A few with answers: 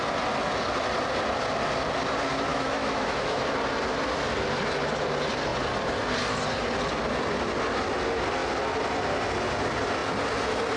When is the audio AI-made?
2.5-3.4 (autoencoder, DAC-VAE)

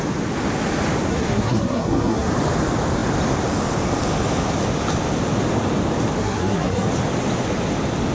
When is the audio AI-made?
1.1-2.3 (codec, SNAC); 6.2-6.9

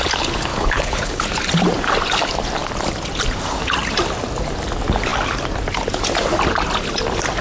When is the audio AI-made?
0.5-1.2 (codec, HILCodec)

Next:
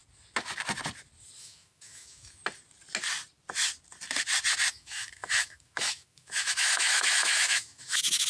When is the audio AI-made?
1.4-2.4 (autoencoder, DAC-VAE); 4.7-8.3